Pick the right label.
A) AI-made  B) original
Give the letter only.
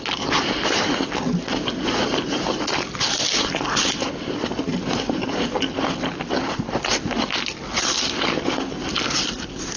B